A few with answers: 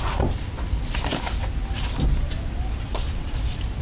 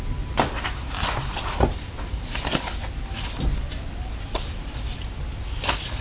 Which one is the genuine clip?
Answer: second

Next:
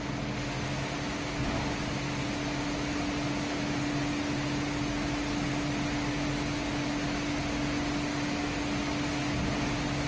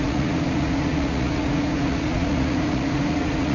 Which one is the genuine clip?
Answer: first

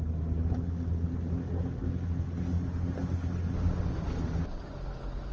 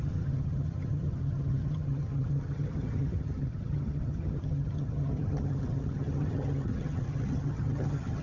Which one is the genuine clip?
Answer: first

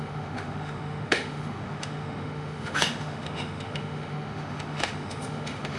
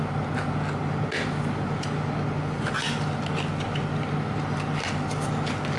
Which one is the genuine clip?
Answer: second